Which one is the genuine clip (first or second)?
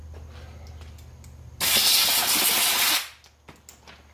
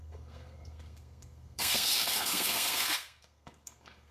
first